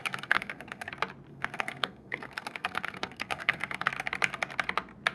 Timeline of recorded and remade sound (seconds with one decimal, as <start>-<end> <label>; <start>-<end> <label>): 0.0-0.9 remade; 0.9-1.3 recorded; 1.3-3.9 remade; 3.9-5.1 recorded